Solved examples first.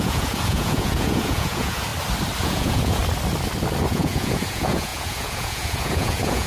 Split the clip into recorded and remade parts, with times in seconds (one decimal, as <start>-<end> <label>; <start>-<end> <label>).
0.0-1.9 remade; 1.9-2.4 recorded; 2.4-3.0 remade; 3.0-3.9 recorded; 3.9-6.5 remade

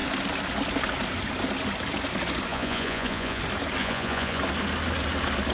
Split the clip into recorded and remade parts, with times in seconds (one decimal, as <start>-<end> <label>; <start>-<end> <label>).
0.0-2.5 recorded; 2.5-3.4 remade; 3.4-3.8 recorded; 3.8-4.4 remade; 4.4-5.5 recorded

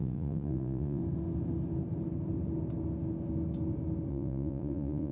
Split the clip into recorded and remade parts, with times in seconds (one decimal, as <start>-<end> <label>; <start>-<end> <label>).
0.0-1.0 remade; 1.0-4.1 recorded; 4.1-5.1 remade

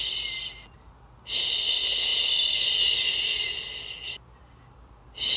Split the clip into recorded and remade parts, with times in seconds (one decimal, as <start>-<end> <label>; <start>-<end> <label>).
0.0-5.4 recorded

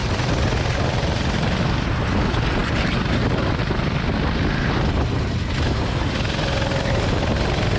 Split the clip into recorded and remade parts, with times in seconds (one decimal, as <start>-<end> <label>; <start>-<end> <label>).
0.0-7.8 recorded

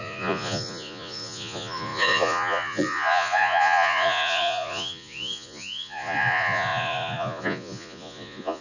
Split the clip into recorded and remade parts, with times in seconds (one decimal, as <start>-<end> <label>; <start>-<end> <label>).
0.0-8.6 remade

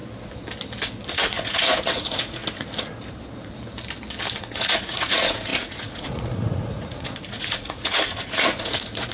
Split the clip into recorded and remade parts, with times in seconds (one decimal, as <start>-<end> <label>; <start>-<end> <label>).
0.0-1.1 recorded; 1.1-2.4 remade; 2.4-4.3 recorded; 4.3-9.1 remade

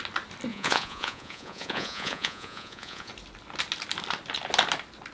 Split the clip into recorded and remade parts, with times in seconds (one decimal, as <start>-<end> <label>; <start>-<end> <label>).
0.0-0.5 recorded; 0.5-3.1 remade; 3.1-5.1 recorded